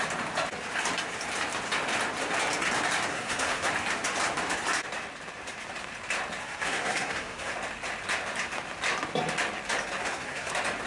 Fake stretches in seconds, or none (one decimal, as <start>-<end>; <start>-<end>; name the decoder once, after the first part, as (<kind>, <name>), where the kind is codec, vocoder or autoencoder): 3.1-3.7 (codec, SNAC); 6.4-7.5; 10.0-10.5